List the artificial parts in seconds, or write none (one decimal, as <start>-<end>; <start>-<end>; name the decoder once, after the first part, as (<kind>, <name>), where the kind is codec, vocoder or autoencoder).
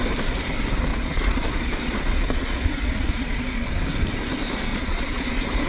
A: 0.9-3.7 (vocoder, Vocos); 4.7-5.3